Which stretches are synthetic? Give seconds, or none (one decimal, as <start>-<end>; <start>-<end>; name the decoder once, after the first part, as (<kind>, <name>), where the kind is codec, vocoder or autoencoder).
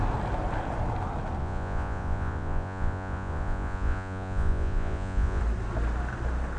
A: 1.4-5.4 (vocoder, Vocos)